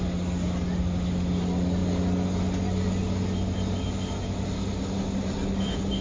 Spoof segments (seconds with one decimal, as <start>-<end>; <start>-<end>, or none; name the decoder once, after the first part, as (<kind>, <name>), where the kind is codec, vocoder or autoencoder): none